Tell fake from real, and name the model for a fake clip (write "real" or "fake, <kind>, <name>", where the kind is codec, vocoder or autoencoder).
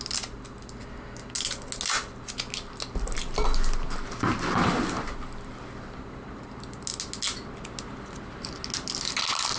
real